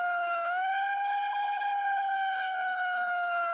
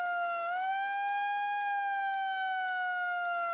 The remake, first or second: first